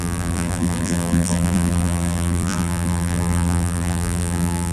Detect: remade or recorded remade